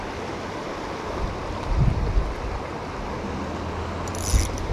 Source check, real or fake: real